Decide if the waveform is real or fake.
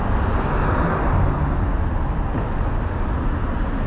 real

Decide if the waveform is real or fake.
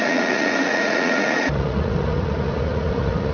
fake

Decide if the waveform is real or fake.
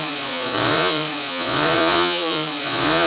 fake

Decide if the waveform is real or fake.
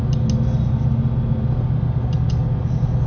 real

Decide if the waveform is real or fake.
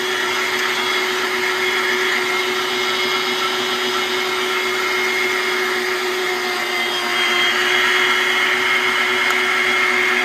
real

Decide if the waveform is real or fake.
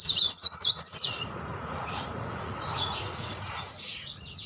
fake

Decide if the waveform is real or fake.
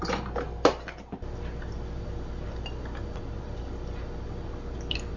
real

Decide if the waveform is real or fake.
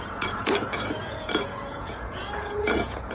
fake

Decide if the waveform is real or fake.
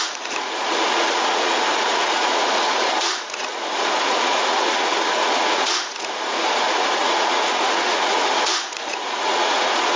fake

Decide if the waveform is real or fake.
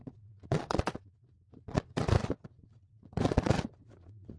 fake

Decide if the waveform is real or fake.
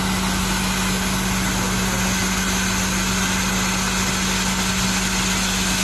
real